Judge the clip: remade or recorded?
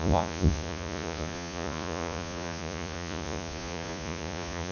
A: remade